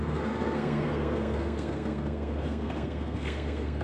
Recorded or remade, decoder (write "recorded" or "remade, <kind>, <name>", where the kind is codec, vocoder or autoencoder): remade, codec, SNAC